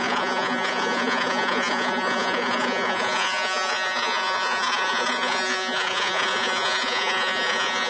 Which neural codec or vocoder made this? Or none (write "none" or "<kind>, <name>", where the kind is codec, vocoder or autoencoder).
vocoder, Vocos